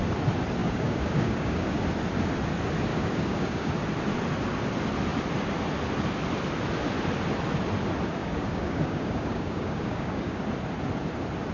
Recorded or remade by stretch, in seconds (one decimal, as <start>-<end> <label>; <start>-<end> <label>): 0.0-0.6 recorded; 0.6-1.8 remade; 1.8-2.9 recorded; 2.9-3.7 remade; 3.7-8.2 recorded; 8.2-10.4 remade; 10.4-11.5 recorded